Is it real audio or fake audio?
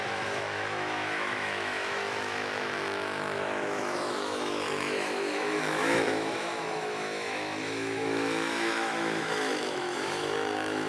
fake